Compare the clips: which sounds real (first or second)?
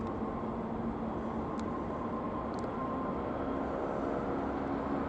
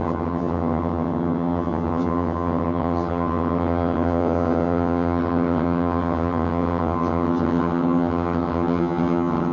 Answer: first